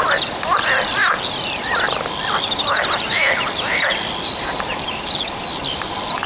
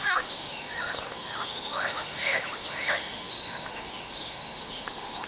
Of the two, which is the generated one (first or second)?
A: second